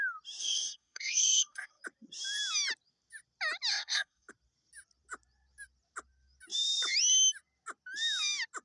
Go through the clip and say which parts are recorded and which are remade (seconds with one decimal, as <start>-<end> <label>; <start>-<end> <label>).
0.0-0.4 recorded; 0.4-1.8 remade; 1.8-3.7 recorded; 3.7-4.3 remade; 4.3-8.6 recorded